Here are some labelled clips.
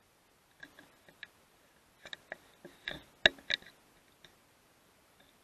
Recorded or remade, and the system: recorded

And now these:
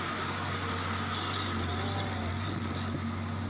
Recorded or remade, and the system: recorded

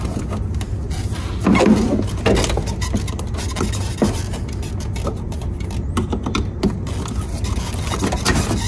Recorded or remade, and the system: recorded